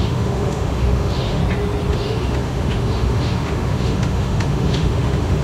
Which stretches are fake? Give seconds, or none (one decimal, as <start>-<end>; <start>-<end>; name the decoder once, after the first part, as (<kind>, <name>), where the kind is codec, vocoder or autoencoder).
0.0-1.4 (autoencoder, DAC-VAE); 1.9-5.4